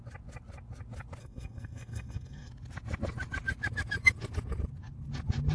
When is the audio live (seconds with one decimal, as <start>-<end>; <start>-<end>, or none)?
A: 0.0-1.2; 2.5-5.5